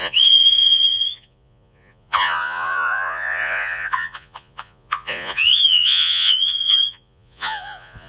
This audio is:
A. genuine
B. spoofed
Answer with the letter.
B